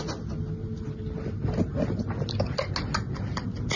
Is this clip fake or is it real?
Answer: real